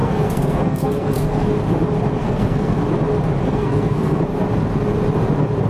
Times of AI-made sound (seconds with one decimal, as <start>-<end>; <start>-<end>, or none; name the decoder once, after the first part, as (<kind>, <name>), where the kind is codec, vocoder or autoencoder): 0.0-1.5 (codec, SNAC); 2.2-2.8; 3.4-4.2